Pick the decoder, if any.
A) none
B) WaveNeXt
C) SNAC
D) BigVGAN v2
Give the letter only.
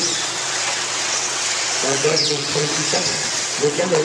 B